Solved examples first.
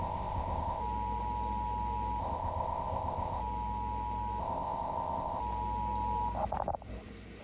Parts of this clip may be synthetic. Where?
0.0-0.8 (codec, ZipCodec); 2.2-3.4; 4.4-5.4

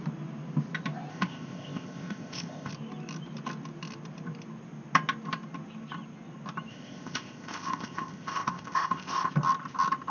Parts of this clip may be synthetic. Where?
1.1-2.7 (codec, ZipCodec); 6.7-9.3

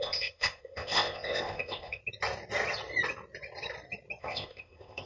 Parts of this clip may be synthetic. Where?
0.0-2.0 (codec, ZipCodec); 4.2-5.1

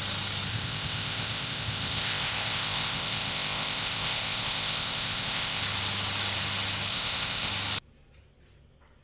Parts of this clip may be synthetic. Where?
0.5-5.6 (codec, ZipCodec); 6.9-7.5

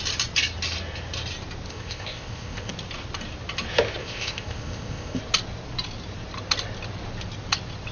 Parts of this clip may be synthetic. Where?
1.7-2.7 (codec, ZipCodec); 4.0-5.2